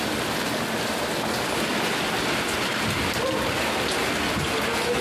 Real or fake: real